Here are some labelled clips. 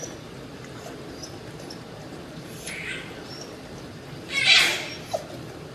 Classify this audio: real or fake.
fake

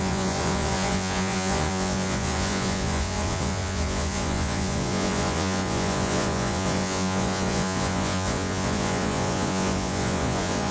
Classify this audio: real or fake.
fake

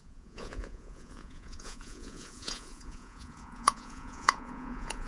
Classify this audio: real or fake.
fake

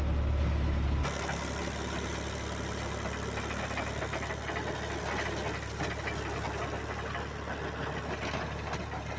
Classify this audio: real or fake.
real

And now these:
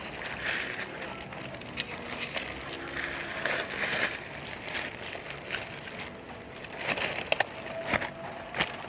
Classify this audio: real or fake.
real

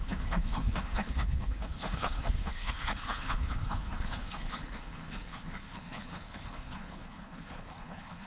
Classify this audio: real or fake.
fake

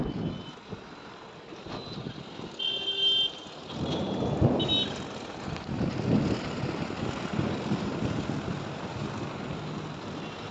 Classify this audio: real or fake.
real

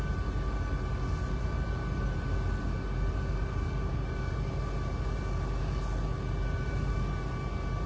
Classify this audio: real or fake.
real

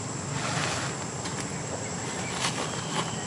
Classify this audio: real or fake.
real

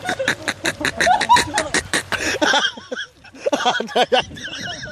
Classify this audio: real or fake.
fake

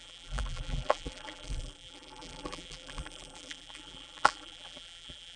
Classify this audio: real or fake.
fake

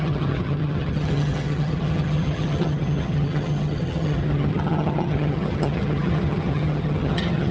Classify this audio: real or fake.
fake